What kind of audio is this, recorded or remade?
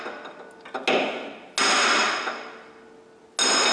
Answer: recorded